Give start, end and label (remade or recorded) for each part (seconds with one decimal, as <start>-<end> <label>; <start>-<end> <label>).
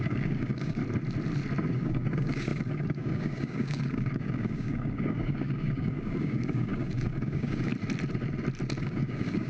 0.0-0.8 remade; 0.8-1.7 recorded; 1.7-7.7 remade; 7.7-8.8 recorded; 8.8-9.5 remade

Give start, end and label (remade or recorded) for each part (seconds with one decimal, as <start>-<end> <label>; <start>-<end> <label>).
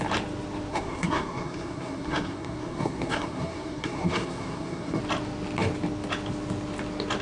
0.0-0.7 recorded; 0.7-5.0 remade; 5.0-7.2 recorded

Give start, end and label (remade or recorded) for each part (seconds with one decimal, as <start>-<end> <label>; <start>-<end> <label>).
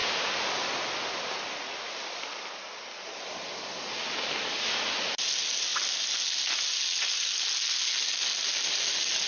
0.0-9.3 recorded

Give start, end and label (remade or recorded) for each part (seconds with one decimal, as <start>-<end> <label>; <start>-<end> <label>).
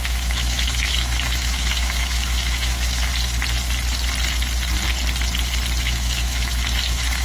0.0-3.1 remade; 3.1-5.8 recorded; 5.8-7.2 remade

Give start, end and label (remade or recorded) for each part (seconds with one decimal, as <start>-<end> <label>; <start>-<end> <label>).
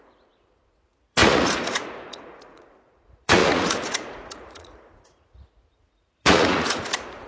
0.0-7.3 remade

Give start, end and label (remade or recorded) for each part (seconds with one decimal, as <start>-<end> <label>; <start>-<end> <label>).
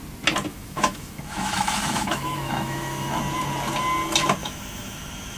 0.0-0.5 recorded; 0.5-3.2 remade; 3.2-4.4 recorded; 4.4-5.4 remade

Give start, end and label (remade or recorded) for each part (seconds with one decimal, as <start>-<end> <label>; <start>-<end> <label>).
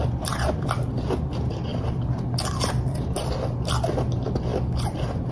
0.0-5.3 recorded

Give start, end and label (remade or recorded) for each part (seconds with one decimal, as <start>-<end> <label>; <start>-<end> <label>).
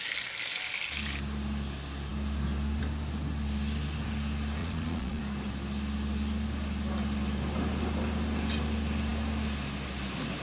0.0-4.6 recorded; 4.6-5.2 remade; 5.2-10.4 recorded